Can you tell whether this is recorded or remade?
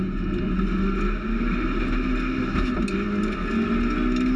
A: recorded